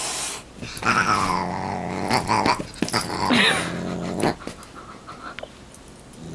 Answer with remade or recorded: recorded